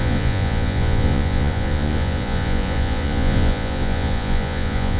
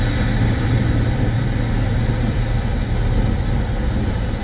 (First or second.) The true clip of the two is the second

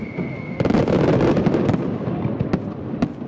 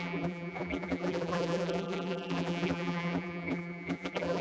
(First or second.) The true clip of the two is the first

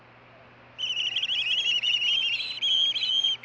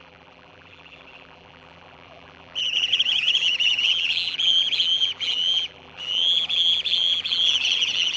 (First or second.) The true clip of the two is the first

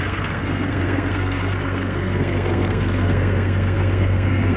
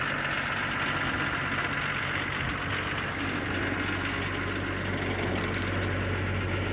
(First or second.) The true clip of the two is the second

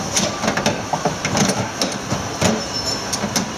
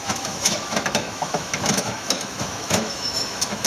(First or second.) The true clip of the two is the first